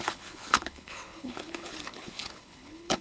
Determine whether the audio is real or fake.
fake